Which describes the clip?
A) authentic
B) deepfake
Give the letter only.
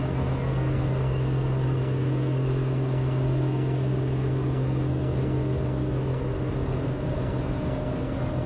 B